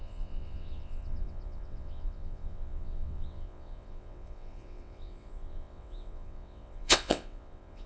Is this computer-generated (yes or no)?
yes